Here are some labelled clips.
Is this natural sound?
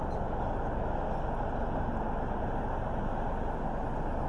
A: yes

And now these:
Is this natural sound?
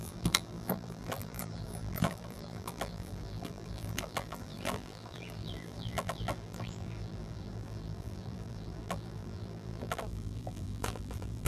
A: no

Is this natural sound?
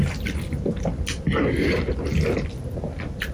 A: yes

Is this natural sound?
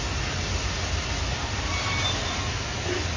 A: yes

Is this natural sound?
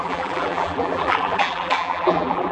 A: no